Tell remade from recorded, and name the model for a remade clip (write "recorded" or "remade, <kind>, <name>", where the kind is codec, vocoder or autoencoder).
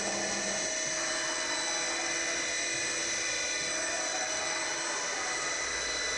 recorded